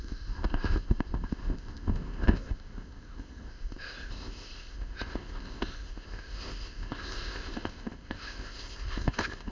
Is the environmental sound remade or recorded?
remade